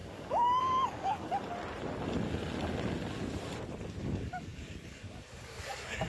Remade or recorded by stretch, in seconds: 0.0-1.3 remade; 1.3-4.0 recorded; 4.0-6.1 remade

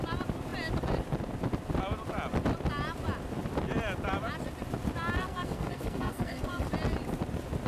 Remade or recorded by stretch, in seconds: 0.0-5.2 recorded; 5.2-6.7 remade; 6.7-7.7 recorded

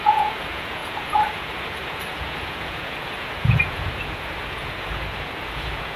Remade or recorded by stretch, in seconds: 0.0-6.0 remade

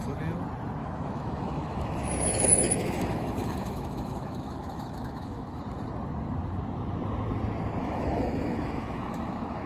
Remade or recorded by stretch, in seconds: 0.0-0.8 recorded; 0.8-5.6 remade; 5.6-7.8 recorded; 7.8-9.7 remade